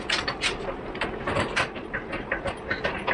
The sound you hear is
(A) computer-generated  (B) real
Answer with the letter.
B